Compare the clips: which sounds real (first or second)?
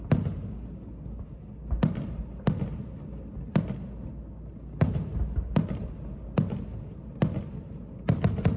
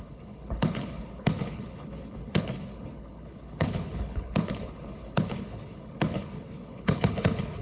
first